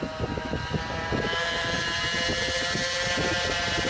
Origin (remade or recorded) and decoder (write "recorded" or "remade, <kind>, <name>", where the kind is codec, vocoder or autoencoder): recorded